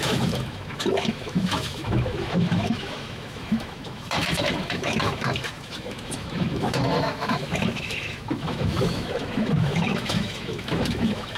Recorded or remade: remade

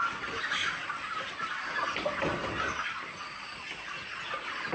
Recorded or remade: recorded